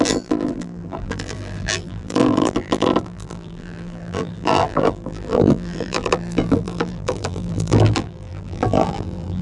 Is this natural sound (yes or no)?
no